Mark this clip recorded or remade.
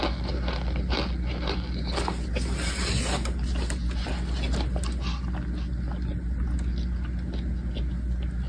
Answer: recorded